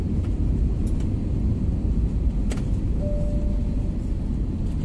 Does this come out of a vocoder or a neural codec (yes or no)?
no